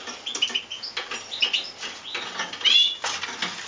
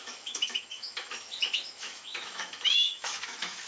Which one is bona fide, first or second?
first